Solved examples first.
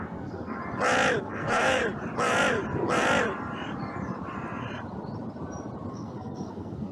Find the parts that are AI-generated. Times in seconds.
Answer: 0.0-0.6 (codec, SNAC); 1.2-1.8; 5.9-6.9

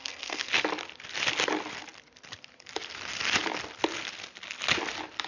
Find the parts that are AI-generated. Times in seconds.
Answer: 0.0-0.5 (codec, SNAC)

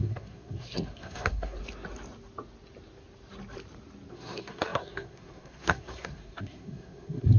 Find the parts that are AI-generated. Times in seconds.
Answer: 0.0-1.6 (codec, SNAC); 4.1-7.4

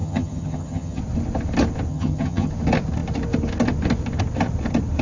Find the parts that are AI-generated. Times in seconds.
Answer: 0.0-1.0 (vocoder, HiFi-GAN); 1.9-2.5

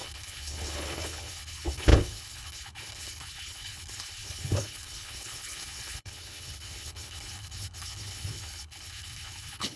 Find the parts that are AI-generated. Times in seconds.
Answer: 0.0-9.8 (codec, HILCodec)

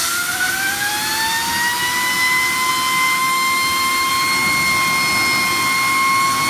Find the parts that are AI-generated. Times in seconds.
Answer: 3.2-4.1 (autoencoder, DAC-VAE)

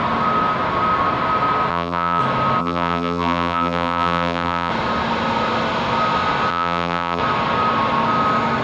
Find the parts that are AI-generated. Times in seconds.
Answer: 1.7-2.2 (vocoder, BigVGAN v2); 2.6-4.7; 6.5-7.2